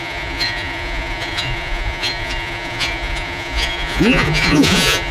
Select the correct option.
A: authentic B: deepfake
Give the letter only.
B